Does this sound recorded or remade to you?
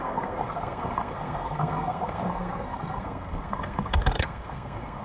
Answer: remade